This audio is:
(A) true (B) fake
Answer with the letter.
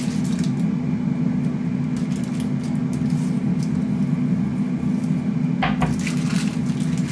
A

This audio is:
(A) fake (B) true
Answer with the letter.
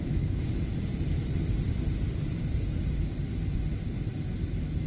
B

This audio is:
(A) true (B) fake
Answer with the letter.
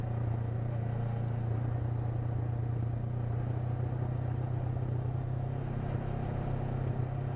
A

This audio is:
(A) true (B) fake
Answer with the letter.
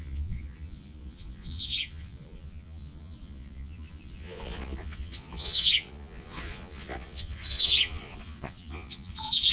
B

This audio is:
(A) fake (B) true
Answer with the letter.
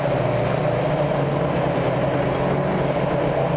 B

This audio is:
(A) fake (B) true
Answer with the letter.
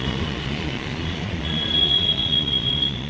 A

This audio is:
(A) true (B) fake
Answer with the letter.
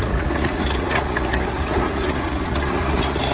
B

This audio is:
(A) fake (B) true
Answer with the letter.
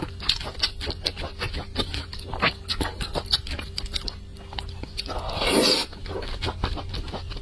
B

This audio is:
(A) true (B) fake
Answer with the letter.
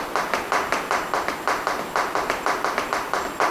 A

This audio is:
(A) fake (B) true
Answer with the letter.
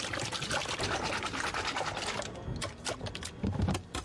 B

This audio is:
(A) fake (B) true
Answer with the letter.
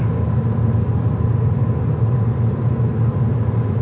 B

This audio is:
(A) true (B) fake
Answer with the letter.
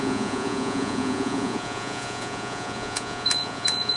B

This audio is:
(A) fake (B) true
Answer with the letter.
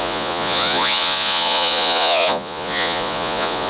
A